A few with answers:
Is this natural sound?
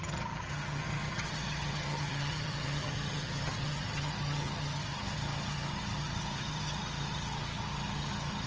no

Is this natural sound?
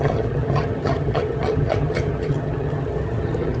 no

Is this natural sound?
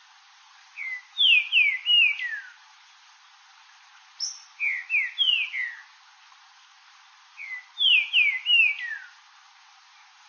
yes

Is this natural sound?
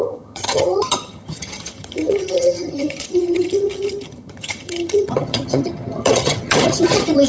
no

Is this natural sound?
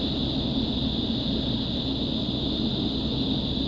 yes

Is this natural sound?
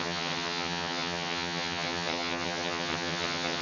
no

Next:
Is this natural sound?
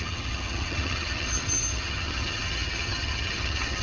no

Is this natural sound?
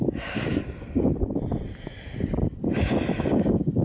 yes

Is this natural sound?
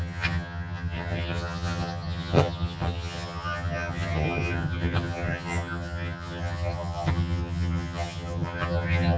no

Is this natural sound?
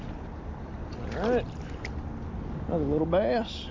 yes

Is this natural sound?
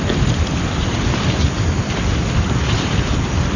yes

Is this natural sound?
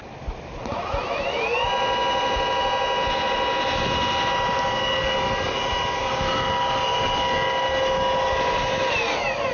yes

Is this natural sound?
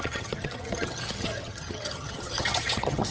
no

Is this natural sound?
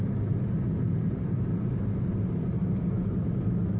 yes